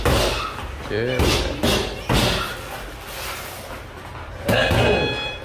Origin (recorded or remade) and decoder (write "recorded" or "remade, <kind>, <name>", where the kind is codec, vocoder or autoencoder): recorded